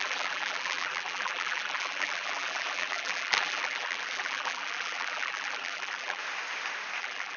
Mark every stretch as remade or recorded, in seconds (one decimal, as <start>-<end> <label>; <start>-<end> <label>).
0.0-6.2 remade; 6.2-7.0 recorded; 7.0-7.4 remade

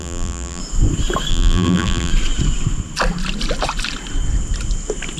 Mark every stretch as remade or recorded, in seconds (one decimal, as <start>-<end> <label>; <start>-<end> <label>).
0.0-0.6 remade; 0.6-1.3 recorded; 1.3-2.1 remade; 2.1-5.2 recorded

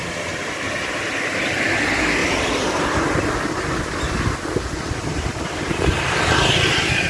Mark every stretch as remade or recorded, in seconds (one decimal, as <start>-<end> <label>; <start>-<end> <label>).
0.0-1.8 remade; 1.8-2.2 recorded; 2.2-3.0 remade; 3.0-5.3 recorded; 5.3-6.5 remade; 6.5-7.1 recorded

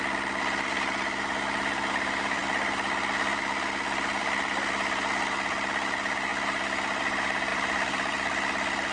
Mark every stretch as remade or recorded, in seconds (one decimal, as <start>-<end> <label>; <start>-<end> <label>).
0.0-7.5 recorded; 7.5-8.1 remade; 8.1-8.9 recorded

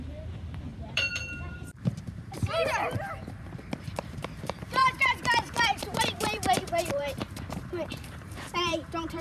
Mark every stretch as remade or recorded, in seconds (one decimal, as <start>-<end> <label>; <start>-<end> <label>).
0.0-0.7 remade; 0.7-1.5 recorded; 1.5-9.2 remade